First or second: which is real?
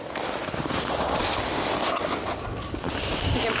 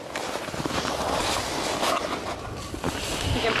first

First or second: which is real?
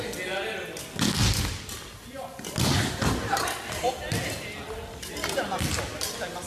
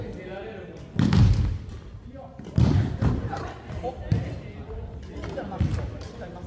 first